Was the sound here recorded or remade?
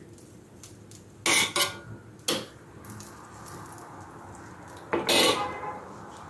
recorded